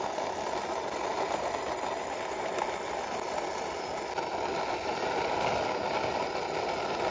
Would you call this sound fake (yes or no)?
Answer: no